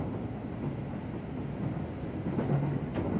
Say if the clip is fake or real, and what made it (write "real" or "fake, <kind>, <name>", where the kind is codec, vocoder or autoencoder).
real